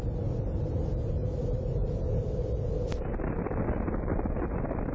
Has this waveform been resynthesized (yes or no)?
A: no